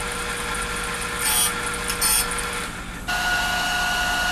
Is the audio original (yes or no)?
yes